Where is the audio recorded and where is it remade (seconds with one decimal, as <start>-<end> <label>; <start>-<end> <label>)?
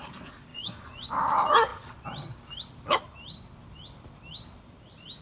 0.0-0.5 recorded; 0.5-1.1 remade; 1.1-5.2 recorded